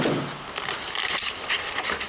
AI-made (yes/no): no